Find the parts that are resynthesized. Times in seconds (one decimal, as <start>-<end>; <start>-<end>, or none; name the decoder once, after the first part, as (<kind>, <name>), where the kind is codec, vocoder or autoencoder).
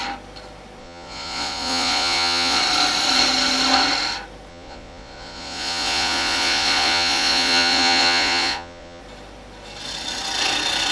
0.8-2.6 (vocoder, Vocos); 4.5-9.0